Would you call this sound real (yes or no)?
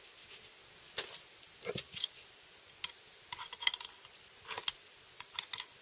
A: yes